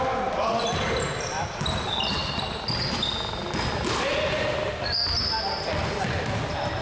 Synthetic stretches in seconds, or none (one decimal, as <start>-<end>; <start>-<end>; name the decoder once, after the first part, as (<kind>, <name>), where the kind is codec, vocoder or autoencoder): none

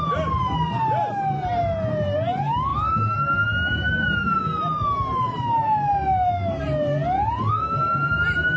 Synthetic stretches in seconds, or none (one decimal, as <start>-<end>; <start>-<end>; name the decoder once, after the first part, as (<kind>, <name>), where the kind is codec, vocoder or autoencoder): none

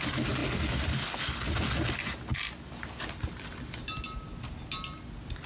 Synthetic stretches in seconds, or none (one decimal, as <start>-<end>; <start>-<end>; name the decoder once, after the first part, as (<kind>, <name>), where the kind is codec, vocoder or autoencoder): none

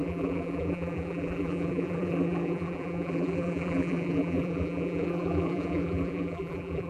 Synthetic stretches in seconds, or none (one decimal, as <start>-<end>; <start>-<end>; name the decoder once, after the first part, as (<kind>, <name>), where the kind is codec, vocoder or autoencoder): 0.0-6.9 (vocoder, BigVGAN v2)

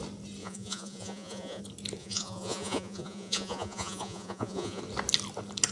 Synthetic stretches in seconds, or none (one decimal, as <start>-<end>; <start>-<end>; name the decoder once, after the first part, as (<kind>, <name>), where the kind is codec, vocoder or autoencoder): 0.4-1.6 (vocoder, Vocos); 2.0-4.8